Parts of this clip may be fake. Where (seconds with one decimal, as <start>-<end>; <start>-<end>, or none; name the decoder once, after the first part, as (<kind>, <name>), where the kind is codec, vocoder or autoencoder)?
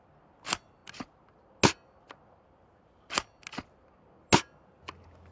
none